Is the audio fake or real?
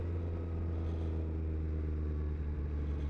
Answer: real